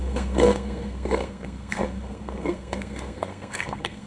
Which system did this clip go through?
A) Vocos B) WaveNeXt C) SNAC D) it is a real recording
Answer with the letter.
C